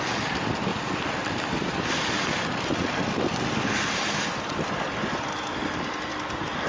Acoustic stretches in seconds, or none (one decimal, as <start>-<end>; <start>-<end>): 0.0-0.7; 4.7-6.1